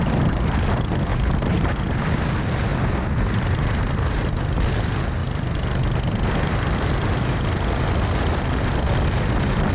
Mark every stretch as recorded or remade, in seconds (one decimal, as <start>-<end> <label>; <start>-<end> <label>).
0.0-1.1 recorded; 1.1-2.0 remade; 2.0-2.7 recorded; 2.7-4.2 remade; 4.2-9.7 recorded